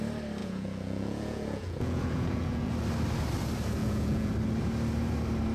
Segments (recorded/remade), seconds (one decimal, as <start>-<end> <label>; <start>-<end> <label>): 0.0-0.4 recorded; 0.4-2.7 remade; 2.7-3.8 recorded; 3.8-4.3 remade; 4.3-5.5 recorded